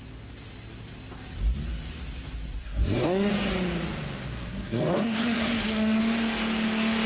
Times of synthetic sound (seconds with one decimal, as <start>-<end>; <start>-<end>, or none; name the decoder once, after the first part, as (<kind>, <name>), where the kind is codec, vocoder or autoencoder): 2.6-3.3 (codec, SNAC); 4.3-6.0